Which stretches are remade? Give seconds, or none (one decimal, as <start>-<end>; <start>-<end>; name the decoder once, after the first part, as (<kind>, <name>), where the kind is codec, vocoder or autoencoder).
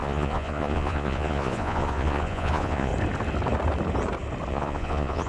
0.0-2.9 (vocoder, Vocos); 4.5-5.3